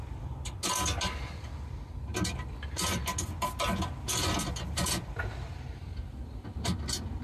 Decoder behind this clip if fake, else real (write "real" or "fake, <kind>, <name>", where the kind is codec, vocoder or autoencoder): real